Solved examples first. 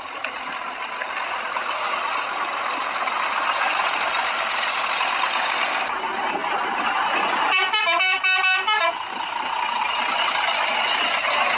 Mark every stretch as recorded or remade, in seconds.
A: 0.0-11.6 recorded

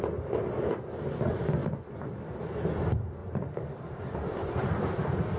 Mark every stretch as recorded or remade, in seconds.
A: 0.0-1.6 recorded; 1.6-2.6 remade; 2.6-3.2 recorded; 3.2-5.4 remade

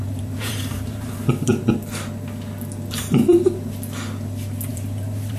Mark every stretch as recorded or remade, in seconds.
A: 0.0-1.5 remade; 1.5-4.7 recorded; 4.7-5.4 remade